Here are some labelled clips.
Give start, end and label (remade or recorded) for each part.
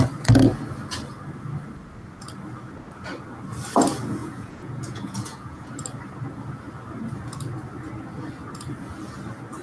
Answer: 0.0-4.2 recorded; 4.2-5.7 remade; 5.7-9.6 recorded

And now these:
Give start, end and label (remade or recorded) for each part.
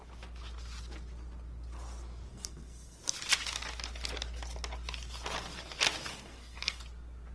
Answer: 0.0-2.3 recorded; 2.3-3.0 remade; 3.0-6.1 recorded; 6.1-6.8 remade; 6.8-7.3 recorded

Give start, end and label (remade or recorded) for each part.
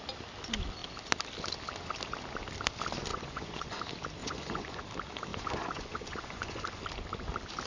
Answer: 0.0-3.1 recorded; 3.1-3.8 remade; 3.8-4.2 recorded; 4.2-4.8 remade; 4.8-5.3 recorded; 5.3-6.8 remade; 6.8-7.7 recorded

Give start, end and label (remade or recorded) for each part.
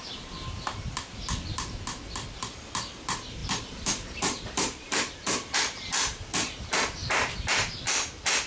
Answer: 0.0-3.4 recorded; 3.4-8.5 remade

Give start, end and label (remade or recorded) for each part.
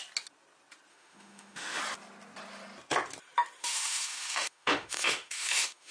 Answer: 0.0-0.9 recorded; 0.9-1.8 remade; 1.8-3.6 recorded; 3.6-5.9 remade